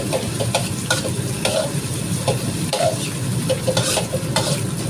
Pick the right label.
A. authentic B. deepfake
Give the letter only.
B